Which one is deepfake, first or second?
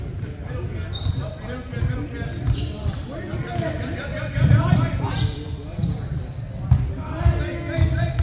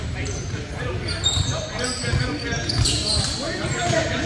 second